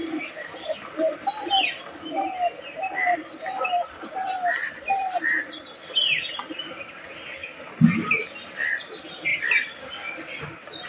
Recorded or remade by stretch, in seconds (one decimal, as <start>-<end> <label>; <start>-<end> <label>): 0.0-10.9 recorded